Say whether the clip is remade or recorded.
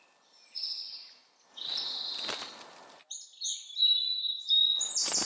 recorded